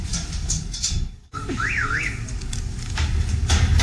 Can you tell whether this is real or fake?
fake